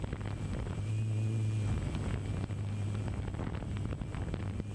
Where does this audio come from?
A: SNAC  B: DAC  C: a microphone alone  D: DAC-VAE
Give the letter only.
C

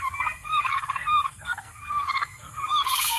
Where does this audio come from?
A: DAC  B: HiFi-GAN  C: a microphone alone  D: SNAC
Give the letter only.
D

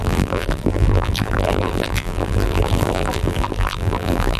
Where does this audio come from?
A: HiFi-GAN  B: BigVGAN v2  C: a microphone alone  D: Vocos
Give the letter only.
B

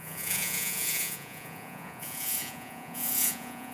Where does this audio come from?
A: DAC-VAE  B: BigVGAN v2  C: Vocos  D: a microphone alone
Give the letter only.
C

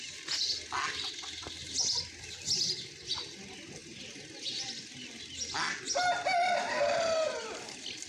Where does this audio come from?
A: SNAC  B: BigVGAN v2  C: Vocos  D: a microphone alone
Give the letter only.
D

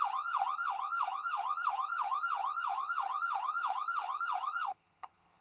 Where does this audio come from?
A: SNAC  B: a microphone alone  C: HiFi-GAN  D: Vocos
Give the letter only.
C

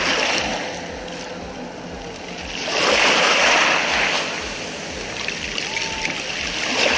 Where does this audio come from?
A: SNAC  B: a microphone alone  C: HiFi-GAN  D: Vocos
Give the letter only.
B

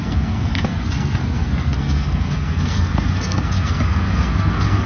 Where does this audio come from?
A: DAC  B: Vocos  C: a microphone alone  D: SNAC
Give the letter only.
D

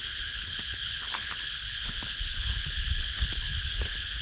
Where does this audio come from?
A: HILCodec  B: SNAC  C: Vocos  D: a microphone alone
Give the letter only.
A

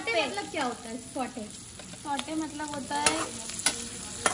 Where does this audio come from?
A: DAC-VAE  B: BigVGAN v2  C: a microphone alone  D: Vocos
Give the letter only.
C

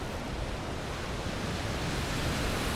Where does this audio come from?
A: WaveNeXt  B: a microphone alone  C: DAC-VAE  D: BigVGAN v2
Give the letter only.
B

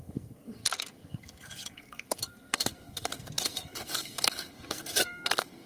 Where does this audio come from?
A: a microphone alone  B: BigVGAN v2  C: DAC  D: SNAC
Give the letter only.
D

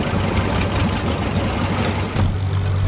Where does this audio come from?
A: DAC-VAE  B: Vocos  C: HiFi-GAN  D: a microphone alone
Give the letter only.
D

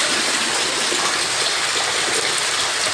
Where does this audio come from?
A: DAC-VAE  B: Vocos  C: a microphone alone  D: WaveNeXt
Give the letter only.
C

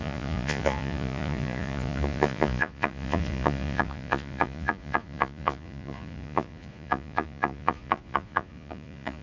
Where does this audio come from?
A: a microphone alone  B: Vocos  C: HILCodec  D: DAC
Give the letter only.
B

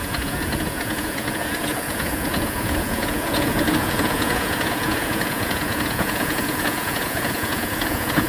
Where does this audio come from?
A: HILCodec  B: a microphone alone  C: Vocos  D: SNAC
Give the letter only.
C